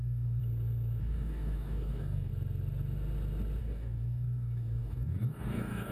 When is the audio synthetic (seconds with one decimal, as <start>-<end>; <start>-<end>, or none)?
0.0-0.4; 1.0-2.3; 3.6-5.9